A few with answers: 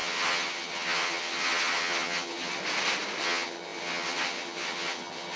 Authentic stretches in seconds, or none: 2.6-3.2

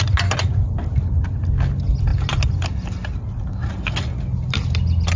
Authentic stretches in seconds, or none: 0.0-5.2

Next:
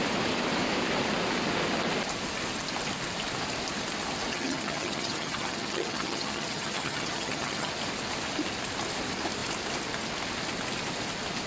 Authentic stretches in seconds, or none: 0.0-4.3; 7.7-11.5

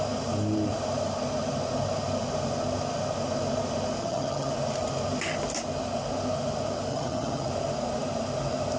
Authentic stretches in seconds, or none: 0.0-4.0; 4.5-6.9; 7.5-8.8